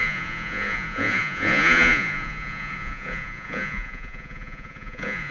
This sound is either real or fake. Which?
fake